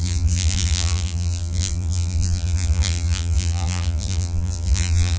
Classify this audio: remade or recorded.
remade